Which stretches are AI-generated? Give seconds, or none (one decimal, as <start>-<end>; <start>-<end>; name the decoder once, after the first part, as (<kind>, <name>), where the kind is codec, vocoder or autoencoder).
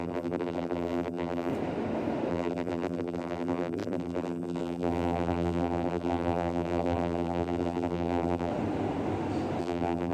0.0-1.5 (vocoder, BigVGAN v2); 2.3-8.5; 9.6-10.1